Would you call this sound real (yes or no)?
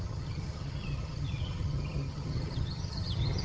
no